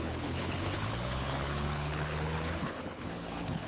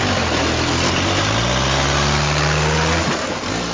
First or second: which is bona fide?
second